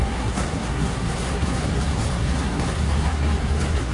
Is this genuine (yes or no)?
no